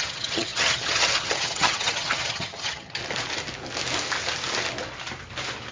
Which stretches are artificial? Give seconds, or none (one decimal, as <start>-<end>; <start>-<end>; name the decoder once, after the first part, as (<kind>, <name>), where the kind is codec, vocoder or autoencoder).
0.0-3.0 (vocoder, HiFi-GAN)